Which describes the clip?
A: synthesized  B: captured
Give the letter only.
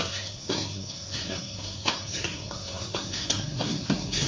A